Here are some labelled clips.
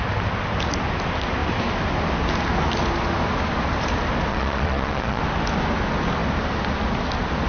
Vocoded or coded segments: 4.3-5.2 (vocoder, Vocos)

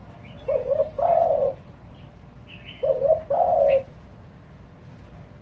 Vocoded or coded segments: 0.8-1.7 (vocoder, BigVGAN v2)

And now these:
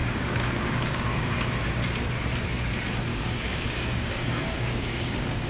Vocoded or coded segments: 0.0-1.8 (codec, DAC); 3.1-5.5